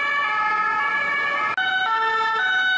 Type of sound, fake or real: real